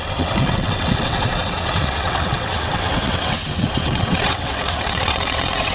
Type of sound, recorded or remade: remade